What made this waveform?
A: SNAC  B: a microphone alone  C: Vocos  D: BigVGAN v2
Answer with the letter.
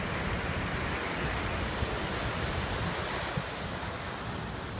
B